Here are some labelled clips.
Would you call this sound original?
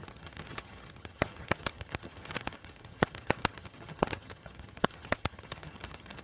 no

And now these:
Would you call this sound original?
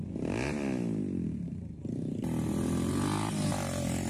yes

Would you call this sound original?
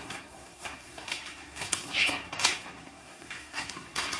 no